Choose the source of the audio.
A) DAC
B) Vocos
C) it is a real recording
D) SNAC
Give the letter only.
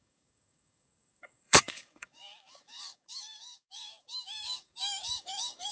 A